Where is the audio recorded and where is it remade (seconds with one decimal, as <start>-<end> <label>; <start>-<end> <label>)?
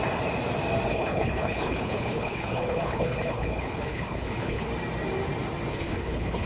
0.0-0.9 recorded; 0.9-4.7 remade; 4.7-5.7 recorded; 5.7-6.5 remade